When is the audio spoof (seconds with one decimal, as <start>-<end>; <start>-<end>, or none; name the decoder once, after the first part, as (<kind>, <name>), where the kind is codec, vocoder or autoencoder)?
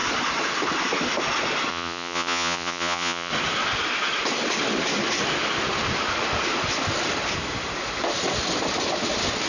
1.7-3.3 (vocoder, Vocos)